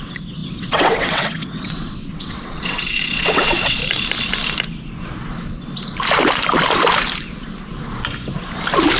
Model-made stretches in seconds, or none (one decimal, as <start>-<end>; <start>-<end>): 0.0-3.8